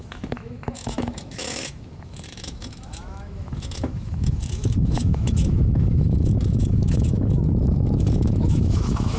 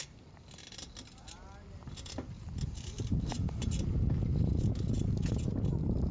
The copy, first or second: first